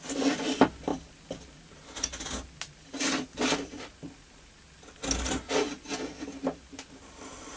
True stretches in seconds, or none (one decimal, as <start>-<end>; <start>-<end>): 0.0-7.6